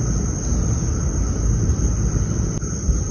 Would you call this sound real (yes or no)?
yes